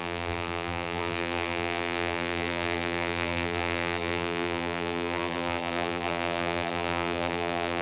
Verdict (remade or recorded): remade